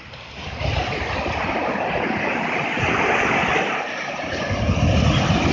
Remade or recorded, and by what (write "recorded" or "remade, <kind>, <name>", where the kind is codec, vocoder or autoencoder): recorded